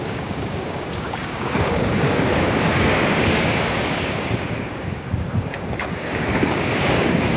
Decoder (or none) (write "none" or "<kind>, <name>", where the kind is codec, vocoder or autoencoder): codec, DAC